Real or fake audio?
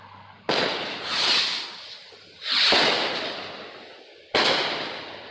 real